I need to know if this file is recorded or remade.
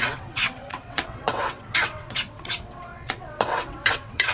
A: remade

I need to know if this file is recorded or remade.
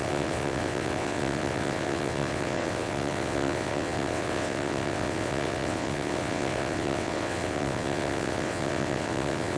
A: remade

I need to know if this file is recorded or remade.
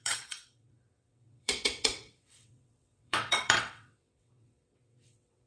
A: remade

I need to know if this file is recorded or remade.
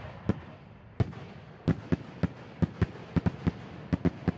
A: recorded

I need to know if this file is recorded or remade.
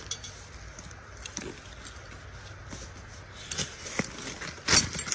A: recorded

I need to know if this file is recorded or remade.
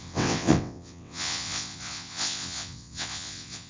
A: remade